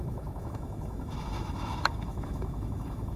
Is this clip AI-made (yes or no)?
yes